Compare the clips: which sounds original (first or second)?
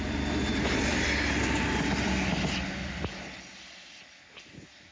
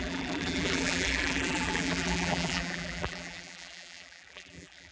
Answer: first